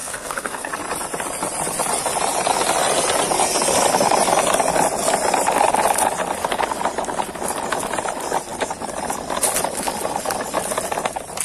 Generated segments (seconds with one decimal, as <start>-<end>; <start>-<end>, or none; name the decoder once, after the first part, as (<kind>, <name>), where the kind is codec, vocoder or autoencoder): 0.0-0.7 (codec, SNAC)